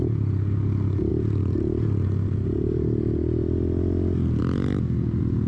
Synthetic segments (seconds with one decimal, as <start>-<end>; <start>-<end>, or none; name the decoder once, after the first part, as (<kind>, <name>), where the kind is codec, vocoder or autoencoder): none